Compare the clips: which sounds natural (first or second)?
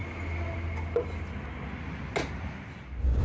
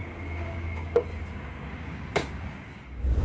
first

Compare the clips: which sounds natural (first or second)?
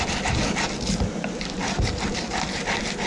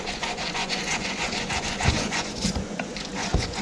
first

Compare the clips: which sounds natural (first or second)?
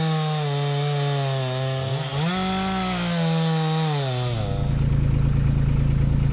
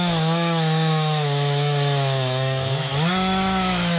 first